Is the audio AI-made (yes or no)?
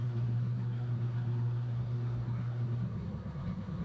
yes